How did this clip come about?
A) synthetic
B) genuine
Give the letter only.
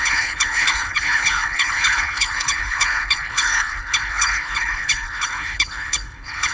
A